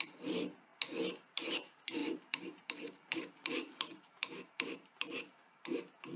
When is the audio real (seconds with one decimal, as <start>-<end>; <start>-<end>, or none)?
0.7-1.3